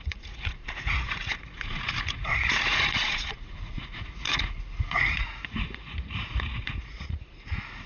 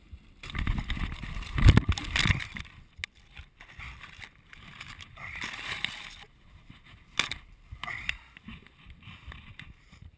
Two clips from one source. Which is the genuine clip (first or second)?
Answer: second